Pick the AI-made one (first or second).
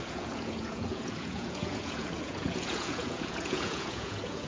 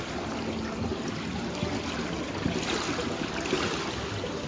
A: first